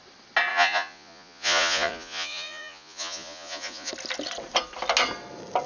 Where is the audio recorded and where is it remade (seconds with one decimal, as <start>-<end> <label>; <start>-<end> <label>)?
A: 0.0-0.5 recorded; 0.5-3.9 remade; 3.9-5.7 recorded